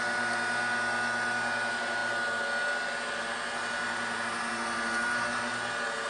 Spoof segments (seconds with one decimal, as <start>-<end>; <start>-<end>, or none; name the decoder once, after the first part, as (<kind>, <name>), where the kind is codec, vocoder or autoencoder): none